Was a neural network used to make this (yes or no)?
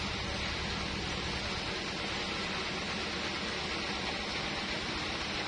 no